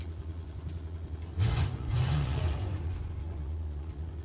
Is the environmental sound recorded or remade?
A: remade